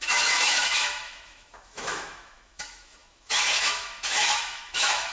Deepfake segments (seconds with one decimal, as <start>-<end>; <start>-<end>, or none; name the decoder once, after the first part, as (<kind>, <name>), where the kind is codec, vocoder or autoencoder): 0.0-5.1 (autoencoder, DAC-VAE)